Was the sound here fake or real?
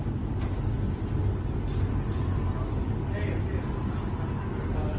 real